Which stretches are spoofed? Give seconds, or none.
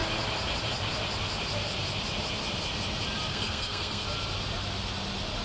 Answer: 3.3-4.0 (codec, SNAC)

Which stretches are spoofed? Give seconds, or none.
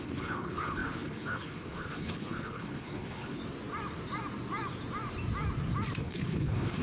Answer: 0.0-3.4 (codec, HILCodec); 6.0-6.8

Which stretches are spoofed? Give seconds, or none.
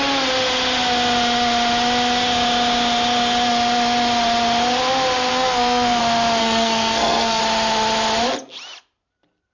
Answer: 5.3-6.0 (codec, SNAC); 6.4-7.4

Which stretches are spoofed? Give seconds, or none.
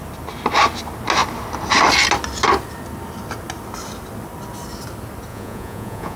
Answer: 5.3-6.2 (vocoder, Vocos)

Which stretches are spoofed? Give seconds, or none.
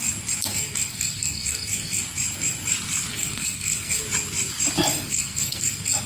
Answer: 0.5-2.0 (codec, SNAC); 3.1-4.0; 4.9-6.1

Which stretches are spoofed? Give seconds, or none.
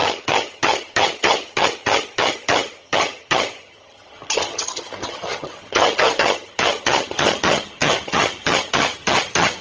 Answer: 0.0-9.6 (vocoder, HiFi-GAN)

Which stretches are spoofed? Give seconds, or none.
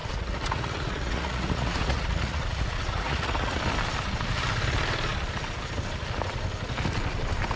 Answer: 0.0-3.6 (vocoder, Vocos)